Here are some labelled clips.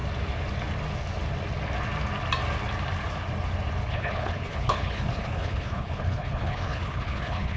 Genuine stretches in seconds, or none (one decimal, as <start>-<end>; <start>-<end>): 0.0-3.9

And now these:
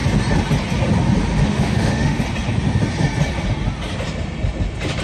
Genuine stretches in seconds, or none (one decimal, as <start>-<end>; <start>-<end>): 0.0-1.3; 2.2-5.0

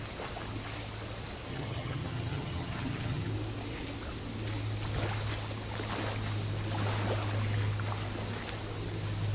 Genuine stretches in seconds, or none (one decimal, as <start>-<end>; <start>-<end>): 0.0-1.5; 3.3-9.3